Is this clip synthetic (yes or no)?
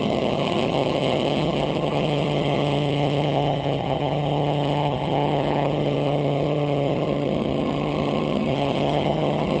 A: yes